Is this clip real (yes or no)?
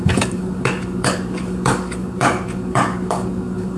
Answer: no